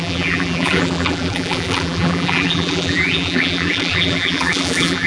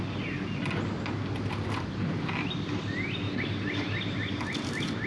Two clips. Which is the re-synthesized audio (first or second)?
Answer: first